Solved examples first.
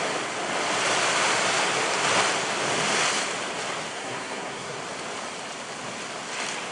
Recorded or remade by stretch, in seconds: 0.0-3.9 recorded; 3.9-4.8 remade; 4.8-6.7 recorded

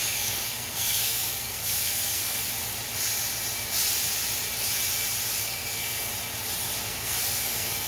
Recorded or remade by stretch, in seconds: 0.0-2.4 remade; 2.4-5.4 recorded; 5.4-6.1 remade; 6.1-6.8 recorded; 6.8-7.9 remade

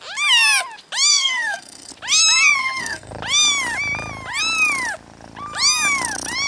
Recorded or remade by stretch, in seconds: 0.0-1.1 recorded; 1.1-1.9 remade; 1.9-2.6 recorded; 2.6-3.1 remade; 3.1-6.5 recorded

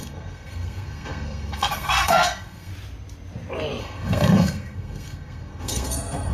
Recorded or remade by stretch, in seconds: 0.0-2.7 remade; 2.7-3.8 recorded; 3.8-6.3 remade

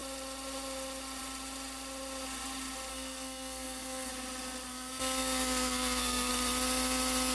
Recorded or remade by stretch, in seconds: 0.0-2.9 recorded; 2.9-4.1 remade; 4.1-4.7 recorded; 4.7-6.3 remade; 6.3-7.3 recorded